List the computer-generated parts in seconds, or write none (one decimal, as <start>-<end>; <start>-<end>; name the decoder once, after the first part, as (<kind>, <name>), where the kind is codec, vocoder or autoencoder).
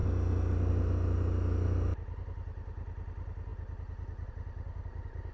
none